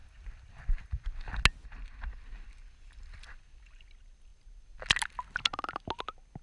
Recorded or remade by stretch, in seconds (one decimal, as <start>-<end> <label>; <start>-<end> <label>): 0.0-6.4 recorded